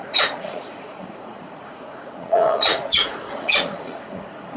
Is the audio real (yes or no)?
no